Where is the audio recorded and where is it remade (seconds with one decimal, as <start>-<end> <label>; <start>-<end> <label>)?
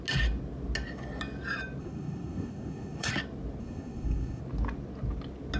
0.0-1.8 recorded; 1.8-3.1 remade; 3.1-3.6 recorded; 3.6-4.4 remade; 4.4-5.6 recorded